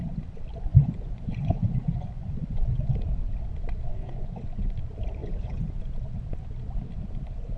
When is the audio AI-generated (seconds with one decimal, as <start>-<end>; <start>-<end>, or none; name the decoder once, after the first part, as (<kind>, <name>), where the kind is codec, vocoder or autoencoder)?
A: 0.7-2.9 (vocoder, Vocos); 3.9-4.7; 5.2-5.8